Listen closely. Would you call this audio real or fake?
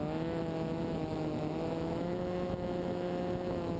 fake